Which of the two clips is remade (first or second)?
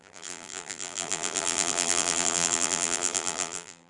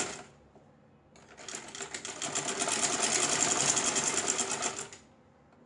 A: first